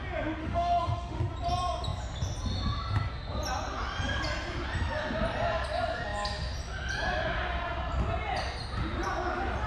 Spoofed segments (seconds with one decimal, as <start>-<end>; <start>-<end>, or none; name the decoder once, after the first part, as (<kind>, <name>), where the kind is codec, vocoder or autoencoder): 0.4-1.2 (autoencoder, DAC-VAE)